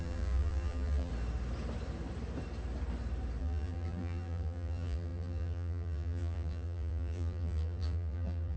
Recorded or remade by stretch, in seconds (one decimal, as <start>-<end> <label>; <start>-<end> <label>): 0.0-1.1 remade; 1.1-3.4 recorded; 3.4-8.6 remade